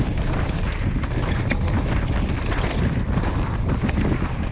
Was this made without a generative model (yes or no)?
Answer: yes